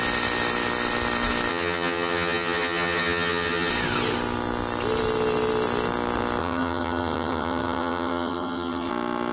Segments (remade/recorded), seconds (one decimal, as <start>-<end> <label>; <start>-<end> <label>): 0.0-1.5 recorded; 1.5-3.7 remade; 3.7-6.4 recorded; 6.4-8.9 remade; 8.9-9.3 recorded